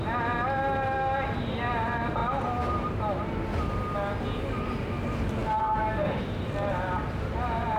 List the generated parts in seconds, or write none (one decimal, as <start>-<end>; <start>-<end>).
none